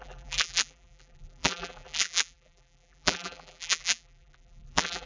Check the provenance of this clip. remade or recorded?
remade